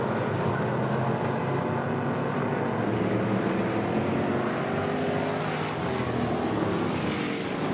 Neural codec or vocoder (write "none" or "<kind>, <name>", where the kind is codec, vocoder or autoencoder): none